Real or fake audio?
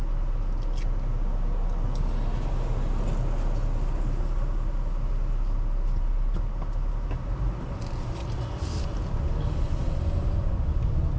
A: real